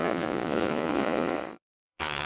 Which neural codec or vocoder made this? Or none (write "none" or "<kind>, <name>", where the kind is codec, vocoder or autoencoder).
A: vocoder, Vocos